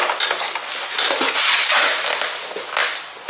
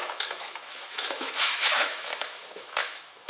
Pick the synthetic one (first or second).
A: second